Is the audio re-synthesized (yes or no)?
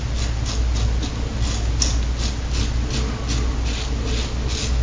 no